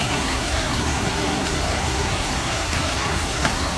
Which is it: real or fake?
fake